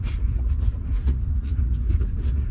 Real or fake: fake